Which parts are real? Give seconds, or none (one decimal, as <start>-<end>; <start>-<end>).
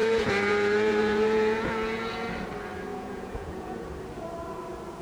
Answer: 2.1-2.9; 3.9-5.0